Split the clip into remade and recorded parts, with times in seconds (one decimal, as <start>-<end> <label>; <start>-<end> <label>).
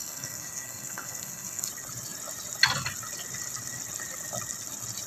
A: 0.0-1.7 remade; 1.7-5.1 recorded